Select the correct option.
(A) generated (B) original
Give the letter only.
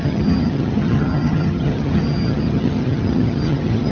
A